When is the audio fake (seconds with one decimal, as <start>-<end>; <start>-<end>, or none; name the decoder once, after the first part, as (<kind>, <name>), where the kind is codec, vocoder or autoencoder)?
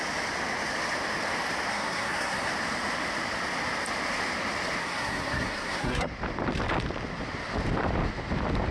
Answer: 1.7-2.5 (codec, SNAC); 4.8-6.1